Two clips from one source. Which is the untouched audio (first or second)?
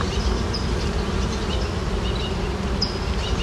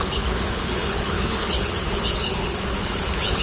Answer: first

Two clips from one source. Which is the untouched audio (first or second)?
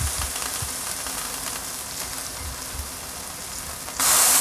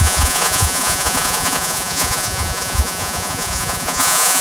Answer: first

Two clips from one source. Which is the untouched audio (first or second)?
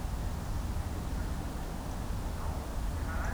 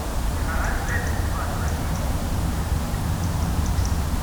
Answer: first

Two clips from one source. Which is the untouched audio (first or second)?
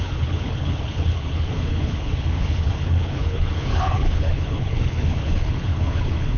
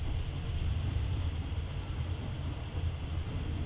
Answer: second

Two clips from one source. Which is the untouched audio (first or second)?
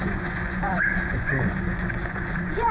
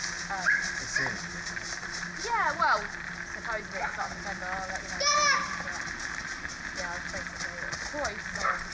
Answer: second